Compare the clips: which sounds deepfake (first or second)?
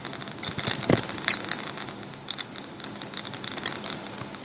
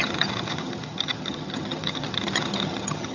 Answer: second